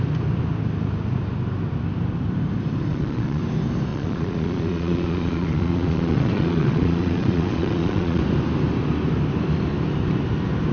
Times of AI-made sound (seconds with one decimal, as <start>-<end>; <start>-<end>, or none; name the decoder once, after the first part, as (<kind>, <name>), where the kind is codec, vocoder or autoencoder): 2.9-3.4 (vocoder, Vocos); 3.9-8.2